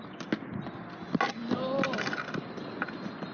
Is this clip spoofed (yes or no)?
no